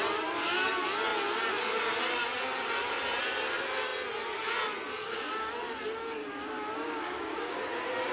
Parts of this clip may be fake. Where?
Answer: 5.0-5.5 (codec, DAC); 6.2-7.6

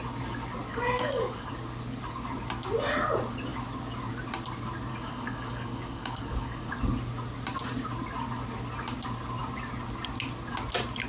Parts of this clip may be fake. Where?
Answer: 0.7-1.5 (codec, DAC); 4.9-6.7

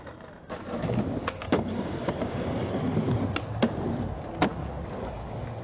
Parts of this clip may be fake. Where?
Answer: 1.2-2.7 (codec, DAC)